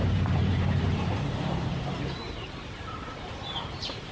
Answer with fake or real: fake